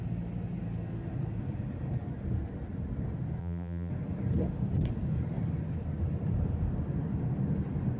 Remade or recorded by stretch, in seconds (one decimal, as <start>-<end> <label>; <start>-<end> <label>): 0.0-3.4 recorded; 3.4-3.9 remade; 3.9-8.0 recorded